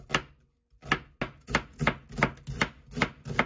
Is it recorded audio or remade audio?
recorded